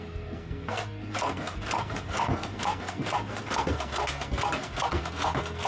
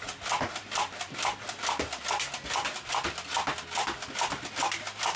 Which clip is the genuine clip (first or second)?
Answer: second